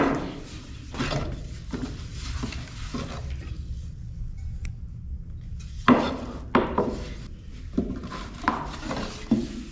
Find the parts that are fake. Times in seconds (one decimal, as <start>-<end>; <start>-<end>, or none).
7.5-8.5